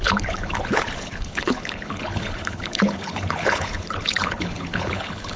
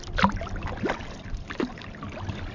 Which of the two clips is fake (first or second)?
first